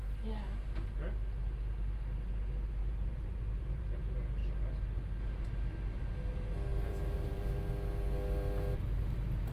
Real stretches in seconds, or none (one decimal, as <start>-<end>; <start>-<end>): 0.0-2.8; 3.8-6.7; 7.6-9.5

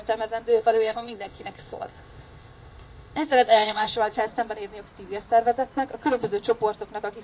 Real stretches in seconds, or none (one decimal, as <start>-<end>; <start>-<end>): 0.0-0.5; 4.2-7.2

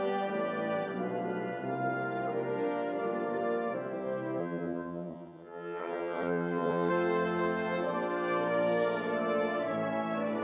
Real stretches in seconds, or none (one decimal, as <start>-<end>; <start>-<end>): 0.0-4.4; 6.9-10.4